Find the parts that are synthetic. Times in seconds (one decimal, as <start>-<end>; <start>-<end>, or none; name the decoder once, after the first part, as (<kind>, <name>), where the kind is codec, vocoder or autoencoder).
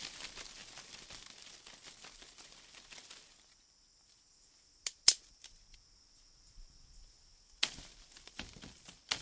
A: none